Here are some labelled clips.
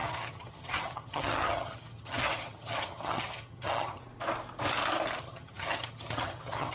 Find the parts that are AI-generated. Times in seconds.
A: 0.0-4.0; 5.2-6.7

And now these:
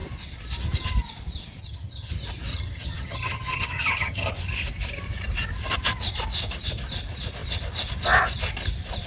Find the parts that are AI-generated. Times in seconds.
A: 1.6-2.1; 2.5-4.3